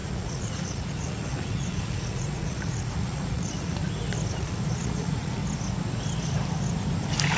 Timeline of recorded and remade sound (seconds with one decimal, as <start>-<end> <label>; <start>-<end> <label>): 0.0-3.8 remade; 3.8-4.3 recorded; 4.3-5.4 remade; 5.4-7.4 recorded